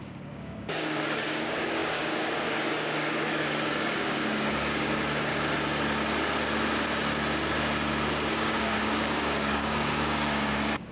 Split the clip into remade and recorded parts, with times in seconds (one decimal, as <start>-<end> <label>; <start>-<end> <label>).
0.0-5.3 remade; 5.3-8.3 recorded; 8.3-10.9 remade